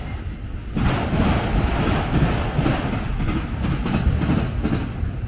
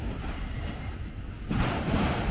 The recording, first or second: first